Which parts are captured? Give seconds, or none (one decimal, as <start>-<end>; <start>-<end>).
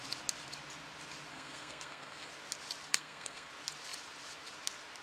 0.0-1.3; 2.3-2.9; 3.5-5.0